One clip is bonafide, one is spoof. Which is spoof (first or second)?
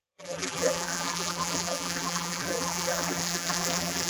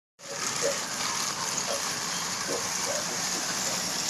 first